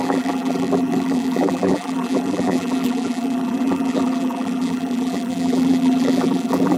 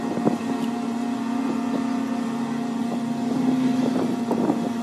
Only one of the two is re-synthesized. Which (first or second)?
first